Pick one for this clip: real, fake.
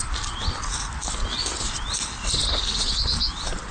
real